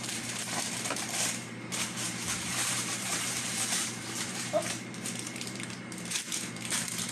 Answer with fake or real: fake